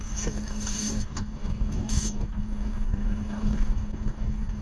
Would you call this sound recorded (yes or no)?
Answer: no